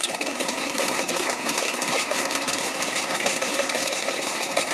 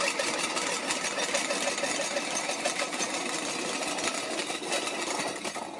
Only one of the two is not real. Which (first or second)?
first